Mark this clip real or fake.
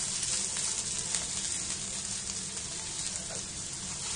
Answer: real